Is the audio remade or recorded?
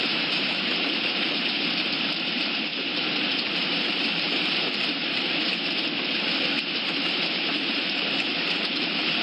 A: remade